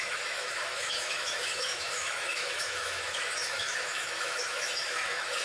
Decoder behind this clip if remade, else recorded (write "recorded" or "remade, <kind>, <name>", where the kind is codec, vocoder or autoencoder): remade, autoencoder, DAC-VAE